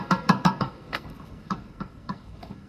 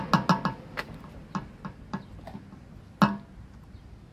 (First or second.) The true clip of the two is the second